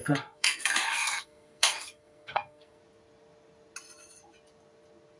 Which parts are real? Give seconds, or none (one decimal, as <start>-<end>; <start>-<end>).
2.8-5.2